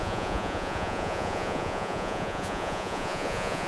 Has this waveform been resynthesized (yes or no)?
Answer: yes